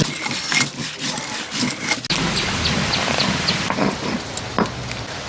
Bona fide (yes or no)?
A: yes